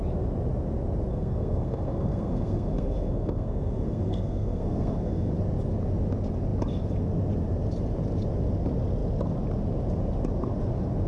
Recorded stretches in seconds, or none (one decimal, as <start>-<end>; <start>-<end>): 0.0-1.1; 5.3-11.1